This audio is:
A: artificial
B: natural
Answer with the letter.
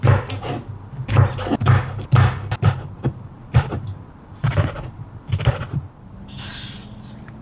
B